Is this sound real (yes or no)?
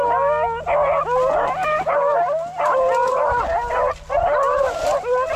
yes